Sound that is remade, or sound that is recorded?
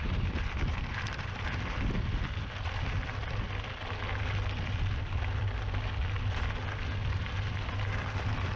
recorded